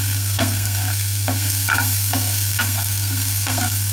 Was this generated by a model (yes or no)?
yes